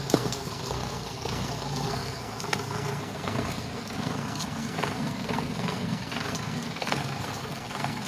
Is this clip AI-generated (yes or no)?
yes